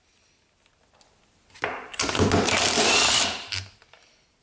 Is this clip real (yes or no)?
yes